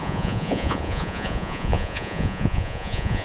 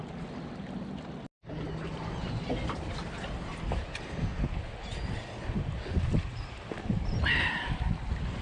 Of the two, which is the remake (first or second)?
first